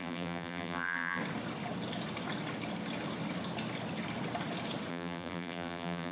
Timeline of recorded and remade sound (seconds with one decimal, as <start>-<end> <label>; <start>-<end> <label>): 0.0-1.2 remade; 1.2-4.9 recorded; 4.9-6.1 remade